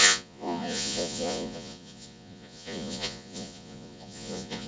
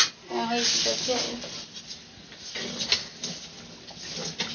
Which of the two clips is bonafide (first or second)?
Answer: second